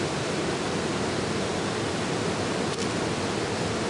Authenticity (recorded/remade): recorded